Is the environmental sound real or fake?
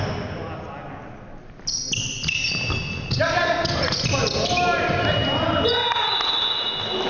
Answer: real